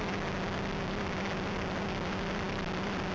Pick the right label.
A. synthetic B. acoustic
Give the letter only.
B